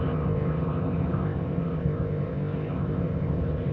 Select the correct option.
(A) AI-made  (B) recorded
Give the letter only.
A